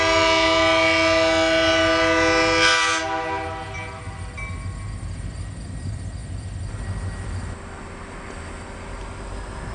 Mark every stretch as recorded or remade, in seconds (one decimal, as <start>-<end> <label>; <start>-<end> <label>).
0.0-9.7 recorded